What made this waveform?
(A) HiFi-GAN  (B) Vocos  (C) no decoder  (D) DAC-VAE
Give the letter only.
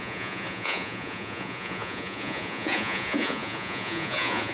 B